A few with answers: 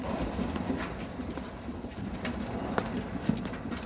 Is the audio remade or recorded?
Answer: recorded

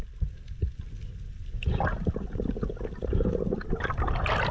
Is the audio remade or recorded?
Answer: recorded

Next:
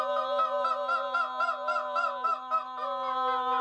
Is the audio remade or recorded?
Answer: recorded